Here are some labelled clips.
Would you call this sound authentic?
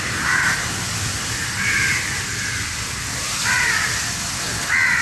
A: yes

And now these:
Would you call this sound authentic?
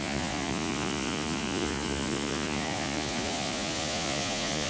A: no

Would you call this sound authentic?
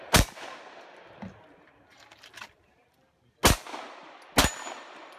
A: yes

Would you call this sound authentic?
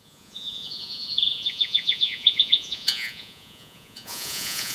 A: no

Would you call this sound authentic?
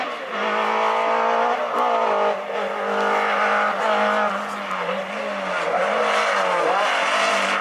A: yes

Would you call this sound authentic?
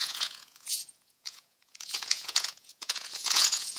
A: no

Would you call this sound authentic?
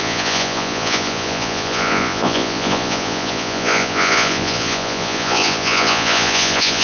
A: no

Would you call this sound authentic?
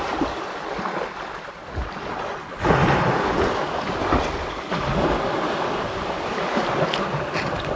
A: yes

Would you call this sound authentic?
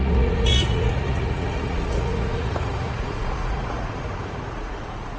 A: no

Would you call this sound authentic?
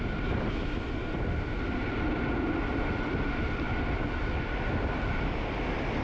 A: yes